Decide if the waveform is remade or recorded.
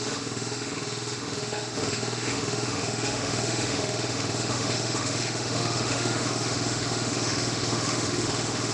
remade